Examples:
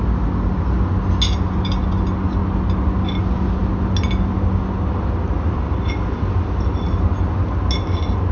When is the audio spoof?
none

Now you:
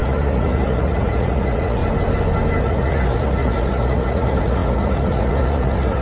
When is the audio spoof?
0.0-1.8 (vocoder, Vocos); 2.6-6.0